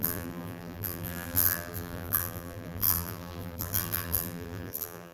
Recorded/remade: remade